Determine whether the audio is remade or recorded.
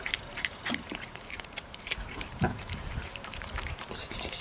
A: remade